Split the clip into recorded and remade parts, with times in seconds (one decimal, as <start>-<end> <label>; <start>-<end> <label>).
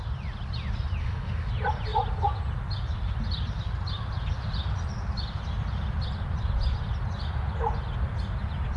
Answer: 0.0-1.0 recorded; 1.0-1.5 remade; 1.5-8.8 recorded